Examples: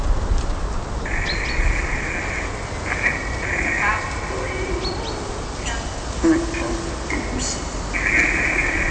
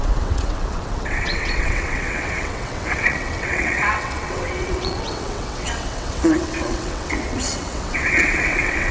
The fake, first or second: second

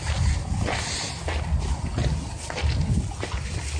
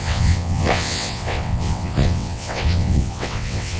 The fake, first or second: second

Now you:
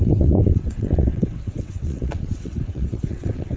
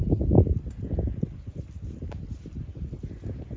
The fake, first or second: first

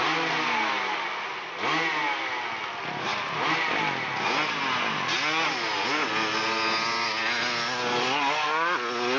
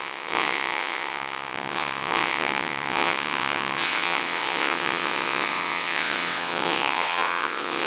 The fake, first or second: second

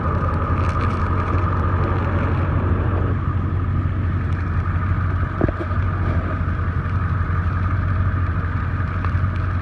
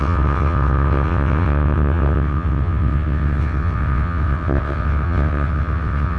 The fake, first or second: second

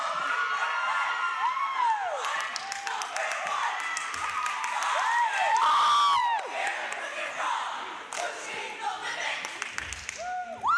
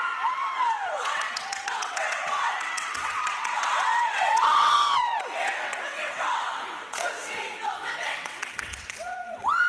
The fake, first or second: second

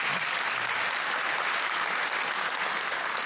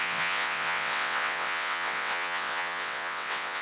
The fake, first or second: second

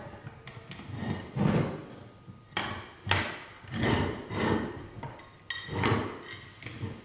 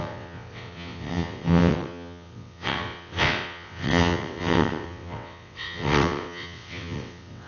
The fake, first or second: second